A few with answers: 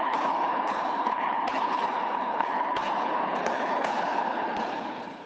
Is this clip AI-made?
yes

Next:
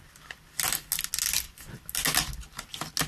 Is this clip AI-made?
no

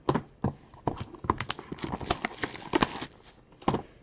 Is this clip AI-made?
no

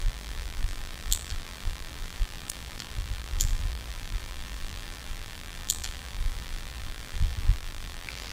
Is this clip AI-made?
yes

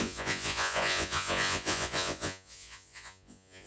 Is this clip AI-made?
yes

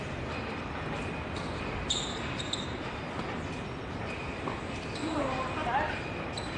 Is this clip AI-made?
no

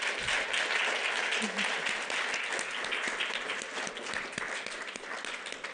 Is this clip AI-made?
no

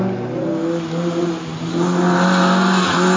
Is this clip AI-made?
no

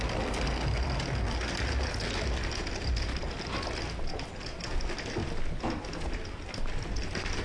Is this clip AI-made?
no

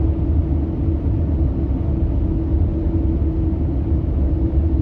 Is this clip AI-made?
no